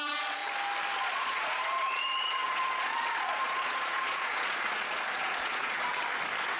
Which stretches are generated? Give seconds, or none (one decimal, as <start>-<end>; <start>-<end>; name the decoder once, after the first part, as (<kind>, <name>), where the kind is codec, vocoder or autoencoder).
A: 0.0-0.4 (vocoder, Vocos); 1.0-5.9